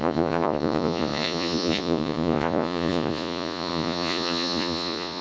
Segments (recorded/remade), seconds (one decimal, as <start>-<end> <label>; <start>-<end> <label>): 0.0-5.2 remade